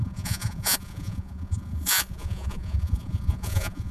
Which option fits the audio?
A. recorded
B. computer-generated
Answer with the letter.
B